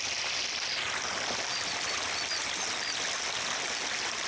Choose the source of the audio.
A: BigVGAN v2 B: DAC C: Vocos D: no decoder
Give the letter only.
D